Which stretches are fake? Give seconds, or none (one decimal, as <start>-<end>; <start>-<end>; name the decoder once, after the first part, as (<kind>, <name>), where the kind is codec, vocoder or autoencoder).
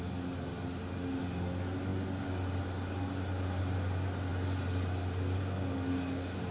none